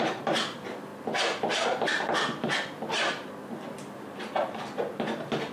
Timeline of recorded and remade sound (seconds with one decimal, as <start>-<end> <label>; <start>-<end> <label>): 0.0-5.5 recorded